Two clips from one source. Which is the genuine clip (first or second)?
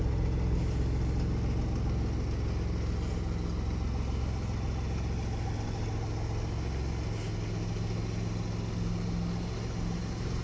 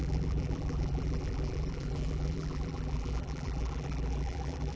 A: first